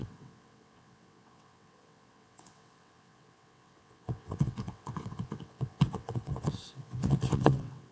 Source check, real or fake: fake